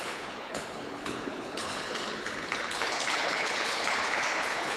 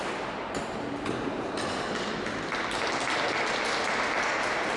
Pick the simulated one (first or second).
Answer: first